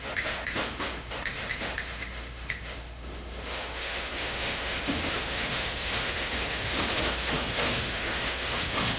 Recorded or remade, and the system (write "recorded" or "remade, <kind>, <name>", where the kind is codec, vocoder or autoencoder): remade, autoencoder, DAC-VAE